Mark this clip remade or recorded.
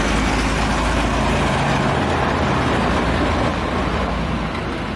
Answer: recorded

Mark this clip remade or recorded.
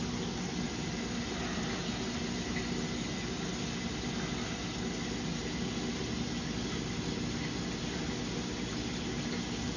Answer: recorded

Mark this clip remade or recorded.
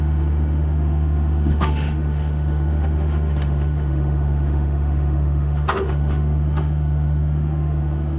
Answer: remade